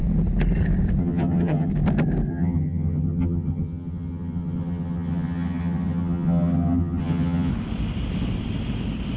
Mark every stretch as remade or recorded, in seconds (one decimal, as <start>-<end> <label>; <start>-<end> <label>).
0.0-1.0 recorded; 1.0-1.7 remade; 1.7-2.3 recorded; 2.3-7.5 remade; 7.5-9.2 recorded